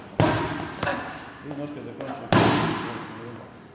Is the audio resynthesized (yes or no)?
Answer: no